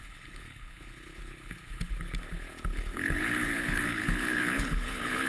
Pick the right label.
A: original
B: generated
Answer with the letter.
B